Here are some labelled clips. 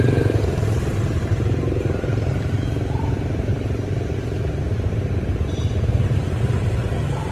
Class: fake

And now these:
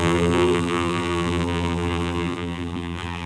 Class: fake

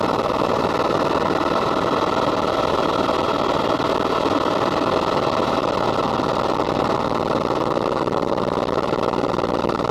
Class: fake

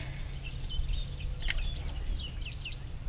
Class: real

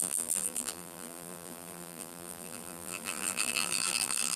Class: fake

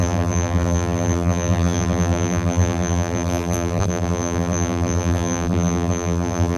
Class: fake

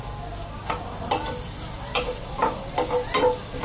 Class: real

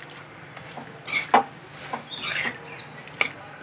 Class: real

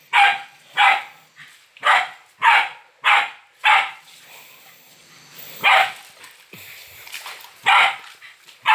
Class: real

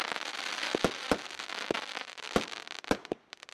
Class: fake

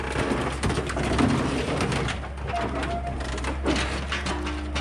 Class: real